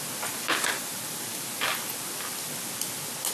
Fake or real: real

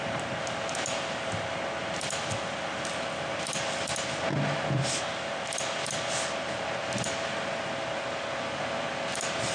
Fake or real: real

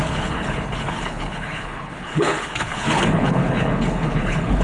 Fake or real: fake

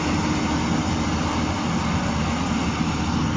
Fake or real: real